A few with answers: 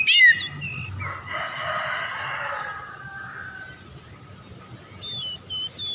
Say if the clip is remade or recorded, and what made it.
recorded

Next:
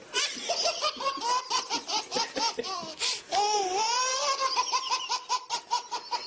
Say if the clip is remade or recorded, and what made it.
recorded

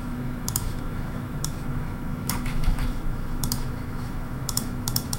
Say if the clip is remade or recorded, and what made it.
remade, autoencoder, DAC-VAE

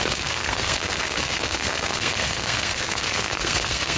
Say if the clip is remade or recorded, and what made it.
remade, codec, SNAC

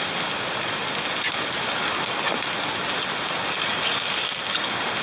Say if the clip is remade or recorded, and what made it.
recorded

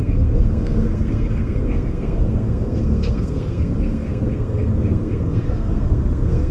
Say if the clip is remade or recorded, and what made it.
remade, codec, SNAC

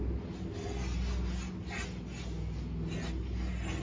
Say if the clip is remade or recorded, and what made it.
recorded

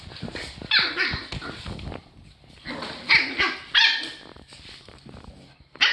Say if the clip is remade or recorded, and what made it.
remade, vocoder, BigVGAN v2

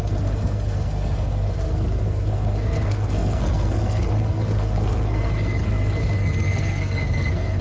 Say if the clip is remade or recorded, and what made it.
remade, codec, SNAC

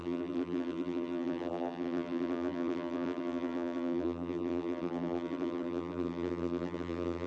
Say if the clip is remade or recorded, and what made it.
remade, vocoder, BigVGAN v2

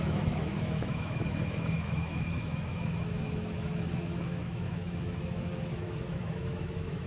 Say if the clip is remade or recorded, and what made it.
remade, autoencoder, DAC-VAE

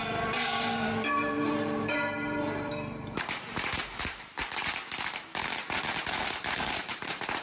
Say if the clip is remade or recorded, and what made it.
remade, vocoder, BigVGAN v2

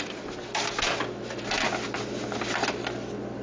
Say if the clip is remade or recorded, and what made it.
recorded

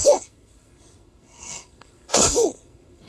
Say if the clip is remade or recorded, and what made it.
remade, codec, SNAC